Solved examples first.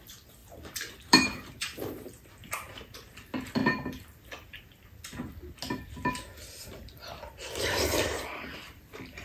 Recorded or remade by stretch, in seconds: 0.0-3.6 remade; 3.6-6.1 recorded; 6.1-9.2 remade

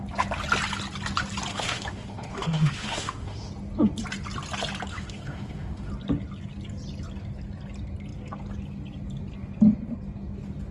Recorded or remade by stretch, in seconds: 0.0-1.5 recorded; 1.5-3.5 remade; 3.5-4.9 recorded; 4.9-5.9 remade; 5.9-10.7 recorded

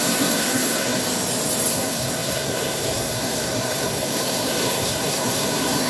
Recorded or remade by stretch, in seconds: 0.0-1.0 remade; 1.0-1.7 recorded; 1.7-5.9 remade

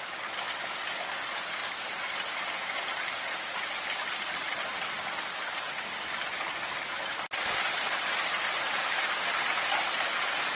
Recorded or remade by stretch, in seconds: 0.0-10.6 recorded

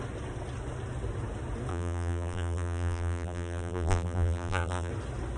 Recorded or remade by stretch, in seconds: 0.0-1.7 recorded; 1.7-4.9 remade; 4.9-5.4 recorded

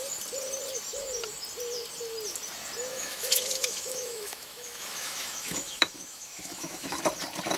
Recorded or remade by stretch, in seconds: 0.0-2.9 recorded; 2.9-7.0 remade; 7.0-7.6 recorded

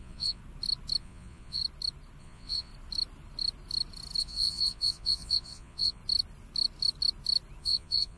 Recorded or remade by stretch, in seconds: 0.0-0.4 remade; 0.4-1.0 recorded; 1.0-1.6 remade; 1.6-2.2 recorded; 2.2-2.7 remade; 2.7-4.2 recorded; 4.2-6.0 remade; 6.0-7.6 recorded; 7.6-8.2 remade